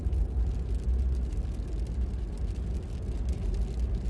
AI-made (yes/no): no